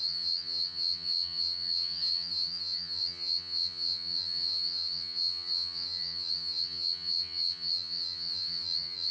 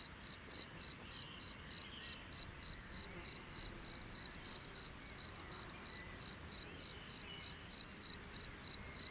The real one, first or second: second